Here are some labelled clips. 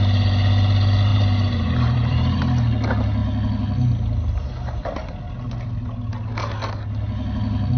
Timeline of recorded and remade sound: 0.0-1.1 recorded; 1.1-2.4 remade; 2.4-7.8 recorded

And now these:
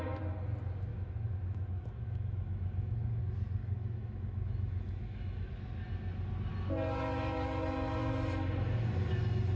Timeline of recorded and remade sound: 0.0-0.9 recorded; 0.9-3.2 remade; 3.2-3.6 recorded; 3.6-5.5 remade; 5.5-9.6 recorded

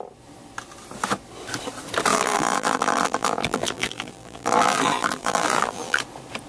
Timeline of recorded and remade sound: 0.0-2.1 recorded; 2.1-6.0 remade; 6.0-6.5 recorded

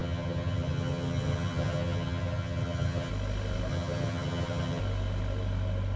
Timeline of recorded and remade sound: 0.0-3.1 remade; 3.1-3.7 recorded; 3.7-4.8 remade; 4.8-6.0 recorded

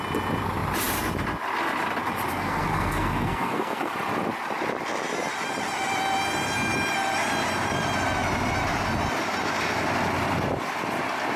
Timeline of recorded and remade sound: 0.0-2.3 recorded; 2.3-3.9 remade; 3.9-11.4 recorded